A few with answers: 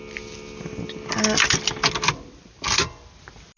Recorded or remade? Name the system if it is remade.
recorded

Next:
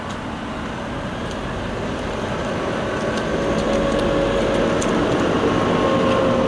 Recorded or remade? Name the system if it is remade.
recorded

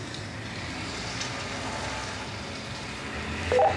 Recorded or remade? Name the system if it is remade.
recorded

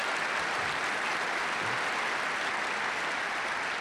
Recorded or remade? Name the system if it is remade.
recorded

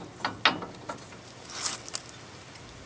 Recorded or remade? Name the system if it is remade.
recorded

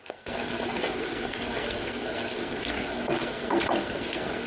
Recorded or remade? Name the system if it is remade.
remade, codec, SNAC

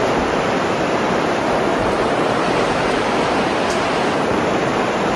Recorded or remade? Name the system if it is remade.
remade, vocoder, BigVGAN v2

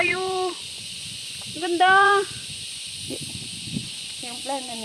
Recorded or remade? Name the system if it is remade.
remade, vocoder, Vocos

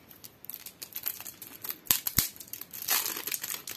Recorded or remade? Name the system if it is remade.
recorded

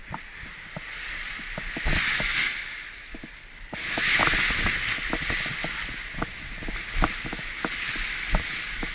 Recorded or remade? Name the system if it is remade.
recorded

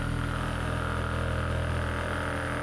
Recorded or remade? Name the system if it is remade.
recorded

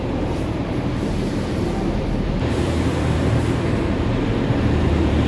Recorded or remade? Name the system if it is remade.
remade, vocoder, BigVGAN v2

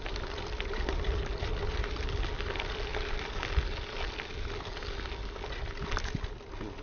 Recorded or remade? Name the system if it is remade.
recorded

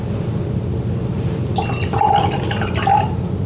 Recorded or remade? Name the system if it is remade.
recorded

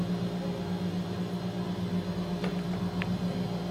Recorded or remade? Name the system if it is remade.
recorded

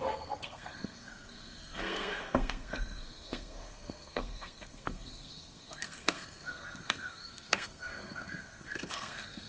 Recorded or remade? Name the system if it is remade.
remade, codec, SNAC